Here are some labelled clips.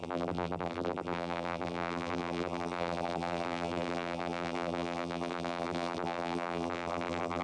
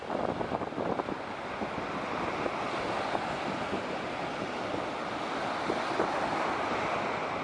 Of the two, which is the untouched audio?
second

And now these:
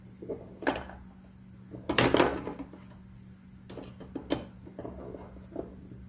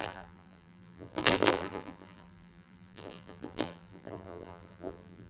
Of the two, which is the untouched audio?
first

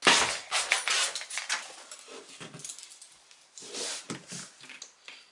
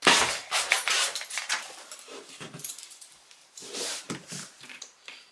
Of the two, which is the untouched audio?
first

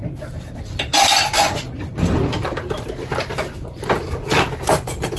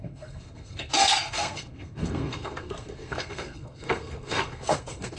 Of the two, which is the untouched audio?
first